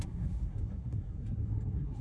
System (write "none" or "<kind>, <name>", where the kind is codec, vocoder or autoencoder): codec, SNAC